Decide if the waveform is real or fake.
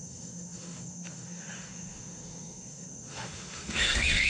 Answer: fake